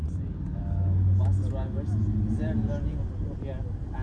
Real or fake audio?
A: real